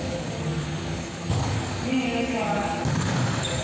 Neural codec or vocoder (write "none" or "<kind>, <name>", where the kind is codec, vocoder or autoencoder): codec, DAC